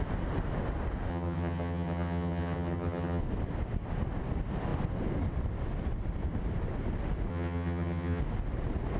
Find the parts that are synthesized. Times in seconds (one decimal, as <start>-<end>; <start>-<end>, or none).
1.1-3.2; 7.3-8.2